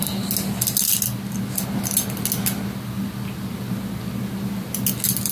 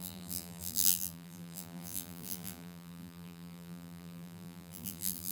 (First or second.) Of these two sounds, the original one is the first